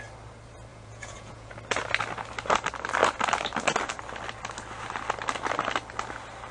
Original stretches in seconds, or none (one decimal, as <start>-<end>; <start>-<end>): 0.0-0.7; 1.5-6.5